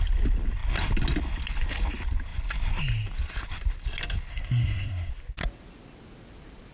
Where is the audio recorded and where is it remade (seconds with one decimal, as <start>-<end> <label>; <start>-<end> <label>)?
0.0-4.3 recorded; 4.3-5.1 remade; 5.1-6.7 recorded